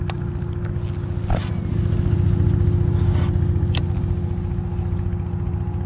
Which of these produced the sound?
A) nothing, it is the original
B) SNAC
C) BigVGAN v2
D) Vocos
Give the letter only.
A